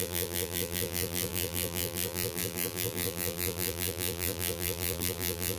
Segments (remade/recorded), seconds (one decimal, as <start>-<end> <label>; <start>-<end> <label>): 0.0-5.6 remade